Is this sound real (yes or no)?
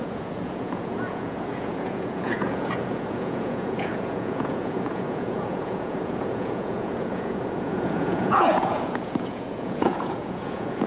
no